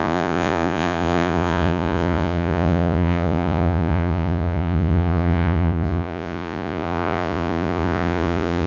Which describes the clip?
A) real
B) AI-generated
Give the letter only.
B